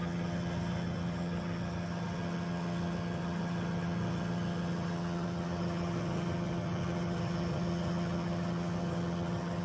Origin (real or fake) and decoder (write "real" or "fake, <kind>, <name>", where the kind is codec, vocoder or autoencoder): fake, vocoder, HiFi-GAN